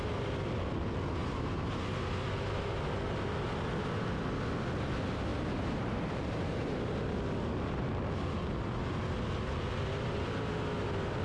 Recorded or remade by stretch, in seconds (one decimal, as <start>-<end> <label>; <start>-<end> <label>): 0.0-1.2 recorded; 1.2-1.8 remade; 1.8-5.3 recorded; 5.3-7.1 remade; 7.1-11.2 recorded